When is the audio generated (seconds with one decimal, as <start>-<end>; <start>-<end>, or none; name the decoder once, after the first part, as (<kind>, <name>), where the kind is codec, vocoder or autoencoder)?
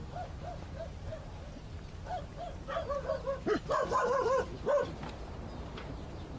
0.0-4.5 (vocoder, BigVGAN v2); 5.3-6.4